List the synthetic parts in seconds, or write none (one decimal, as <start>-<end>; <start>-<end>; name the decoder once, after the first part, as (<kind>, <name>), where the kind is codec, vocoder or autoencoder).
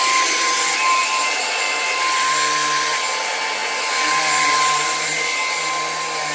none